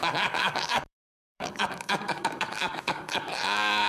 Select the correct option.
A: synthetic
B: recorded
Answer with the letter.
A